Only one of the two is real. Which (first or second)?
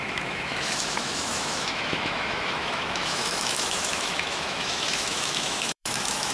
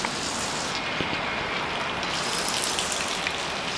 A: second